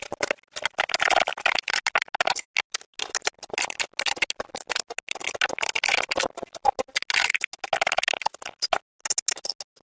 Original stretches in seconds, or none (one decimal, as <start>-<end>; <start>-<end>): 0.0-9.8